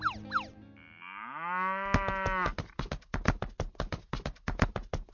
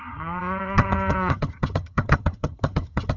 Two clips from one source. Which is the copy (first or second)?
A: second